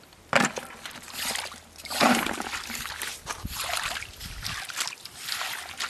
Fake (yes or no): no